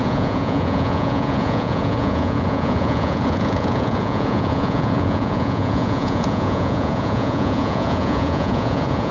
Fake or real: fake